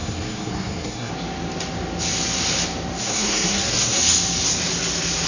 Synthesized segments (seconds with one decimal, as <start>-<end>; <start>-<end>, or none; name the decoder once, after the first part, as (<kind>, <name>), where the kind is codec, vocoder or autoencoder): 0.0-1.1 (codec, SNAC); 3.0-4.0